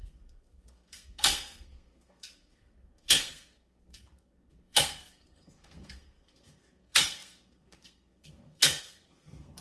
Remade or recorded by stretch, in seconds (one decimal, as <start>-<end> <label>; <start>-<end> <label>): 0.0-9.6 remade